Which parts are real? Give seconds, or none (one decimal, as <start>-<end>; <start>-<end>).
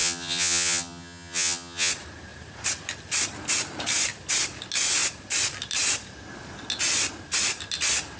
1.9-8.2